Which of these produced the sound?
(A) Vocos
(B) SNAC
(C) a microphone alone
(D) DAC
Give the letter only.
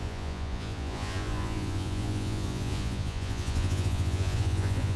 A